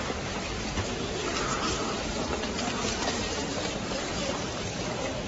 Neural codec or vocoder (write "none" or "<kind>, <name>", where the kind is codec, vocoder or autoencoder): vocoder, BigVGAN v2